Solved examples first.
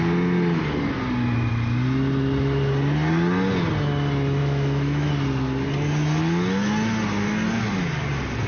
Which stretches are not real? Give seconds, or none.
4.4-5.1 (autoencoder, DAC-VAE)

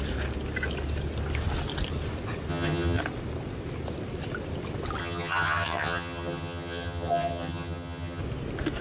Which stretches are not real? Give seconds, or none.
2.5-3.0 (vocoder, HiFi-GAN); 5.0-8.2

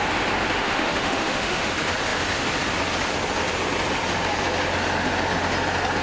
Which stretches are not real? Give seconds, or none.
0.6-1.7 (autoencoder, DAC-VAE)

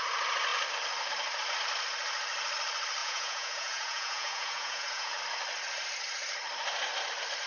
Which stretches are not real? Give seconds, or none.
3.0-5.2 (vocoder, Vocos)